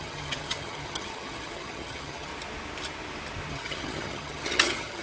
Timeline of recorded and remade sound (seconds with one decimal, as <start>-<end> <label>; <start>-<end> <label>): 0.0-2.3 remade; 2.3-3.5 recorded; 3.5-5.0 remade